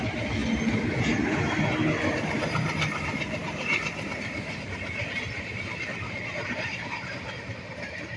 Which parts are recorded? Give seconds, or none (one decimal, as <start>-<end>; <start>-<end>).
0.4-2.4